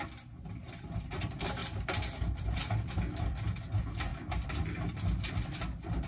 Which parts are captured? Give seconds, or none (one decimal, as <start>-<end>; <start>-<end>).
0.0-6.1